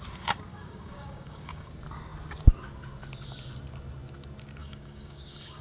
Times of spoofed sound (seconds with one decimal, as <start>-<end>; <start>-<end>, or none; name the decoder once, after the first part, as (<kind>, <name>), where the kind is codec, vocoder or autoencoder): 0.5-1.7 (codec, DAC); 4.6-5.6